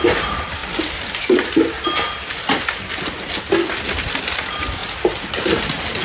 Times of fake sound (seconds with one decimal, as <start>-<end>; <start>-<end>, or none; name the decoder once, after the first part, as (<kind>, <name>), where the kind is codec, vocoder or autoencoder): none